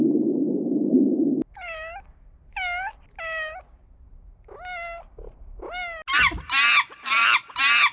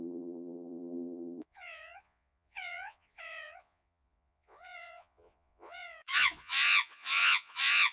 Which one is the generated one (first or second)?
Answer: second